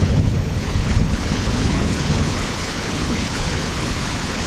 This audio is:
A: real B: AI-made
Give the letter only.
B